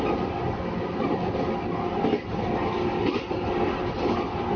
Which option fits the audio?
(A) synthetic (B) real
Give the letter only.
B